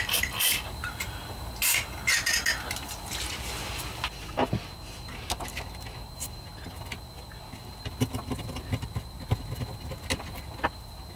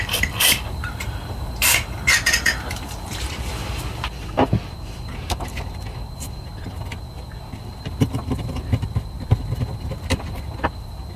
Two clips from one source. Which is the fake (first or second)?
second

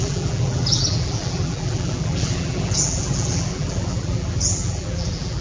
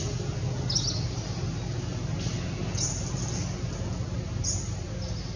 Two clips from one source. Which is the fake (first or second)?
first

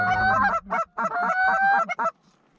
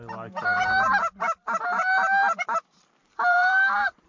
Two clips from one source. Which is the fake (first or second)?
second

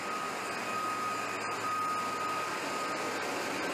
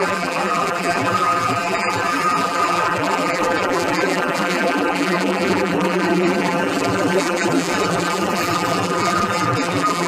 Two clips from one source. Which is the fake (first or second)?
second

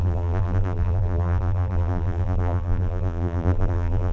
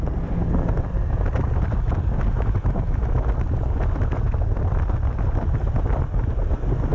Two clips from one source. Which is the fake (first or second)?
first